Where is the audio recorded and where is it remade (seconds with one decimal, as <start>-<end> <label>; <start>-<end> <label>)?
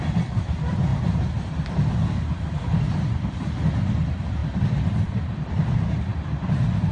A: 0.0-0.9 remade; 0.9-2.8 recorded; 2.8-6.9 remade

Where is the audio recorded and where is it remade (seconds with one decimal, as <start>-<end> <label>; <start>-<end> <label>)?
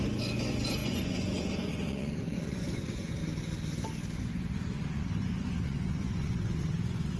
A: 0.0-3.2 remade; 3.2-4.2 recorded; 4.2-7.2 remade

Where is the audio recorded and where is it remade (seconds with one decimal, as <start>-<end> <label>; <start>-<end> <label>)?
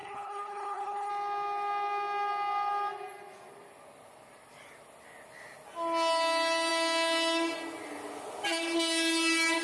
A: 0.0-1.1 remade; 1.1-9.6 recorded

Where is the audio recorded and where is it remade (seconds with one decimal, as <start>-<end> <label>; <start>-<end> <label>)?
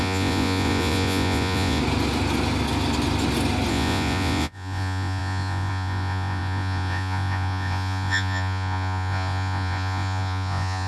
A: 0.0-1.8 remade; 1.8-3.7 recorded; 3.7-10.9 remade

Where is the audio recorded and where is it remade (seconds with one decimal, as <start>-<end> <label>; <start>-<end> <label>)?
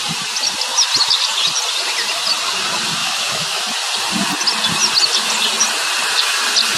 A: 0.0-3.0 recorded; 3.0-3.6 remade; 3.6-6.8 recorded